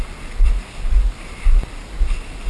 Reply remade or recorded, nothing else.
recorded